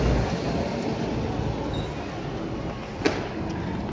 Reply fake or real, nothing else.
real